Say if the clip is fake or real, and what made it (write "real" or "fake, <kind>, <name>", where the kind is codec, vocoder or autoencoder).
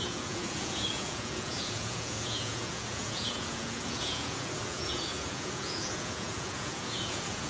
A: fake, vocoder, Vocos